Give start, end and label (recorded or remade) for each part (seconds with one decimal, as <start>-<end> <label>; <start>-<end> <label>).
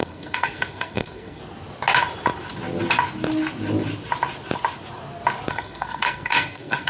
0.0-1.4 remade; 1.4-5.5 recorded; 5.5-6.9 remade